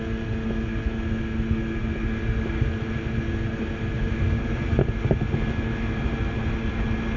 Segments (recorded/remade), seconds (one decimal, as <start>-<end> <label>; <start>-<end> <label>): 0.0-7.2 recorded